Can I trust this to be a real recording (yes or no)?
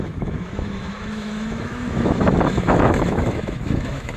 no